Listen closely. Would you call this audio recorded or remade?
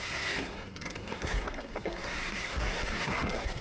remade